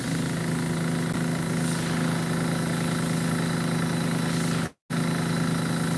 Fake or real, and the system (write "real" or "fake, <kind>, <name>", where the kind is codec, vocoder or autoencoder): real